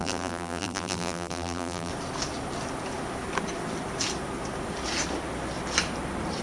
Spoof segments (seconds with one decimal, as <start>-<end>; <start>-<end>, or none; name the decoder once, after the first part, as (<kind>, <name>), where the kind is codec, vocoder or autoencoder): 0.0-1.9 (vocoder, BigVGAN v2)